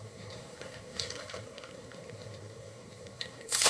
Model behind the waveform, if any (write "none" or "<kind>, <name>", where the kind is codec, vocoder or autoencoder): codec, SNAC